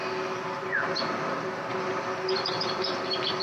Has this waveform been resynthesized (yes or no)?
no